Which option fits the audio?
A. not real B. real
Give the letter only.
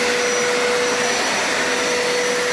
B